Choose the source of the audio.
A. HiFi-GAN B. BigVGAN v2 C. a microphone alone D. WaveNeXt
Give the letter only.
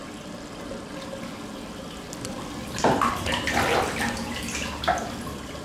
C